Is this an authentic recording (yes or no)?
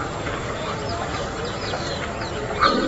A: yes